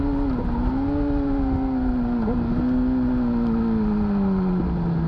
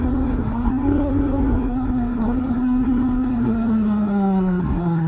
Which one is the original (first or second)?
first